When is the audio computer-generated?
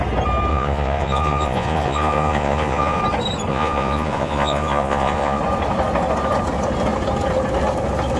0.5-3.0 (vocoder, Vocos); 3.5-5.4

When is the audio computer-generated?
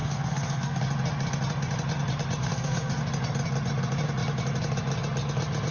0.0-0.8 (codec, SNAC); 2.4-3.0